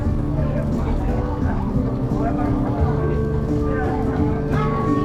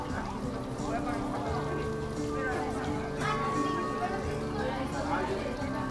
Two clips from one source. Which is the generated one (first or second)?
first